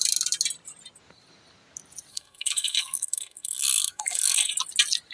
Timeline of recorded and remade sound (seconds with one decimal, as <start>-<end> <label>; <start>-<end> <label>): 0.0-2.1 recorded; 2.1-4.5 remade; 4.5-5.1 recorded